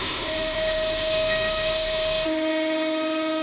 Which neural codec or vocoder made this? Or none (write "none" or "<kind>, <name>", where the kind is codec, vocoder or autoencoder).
autoencoder, DAC-VAE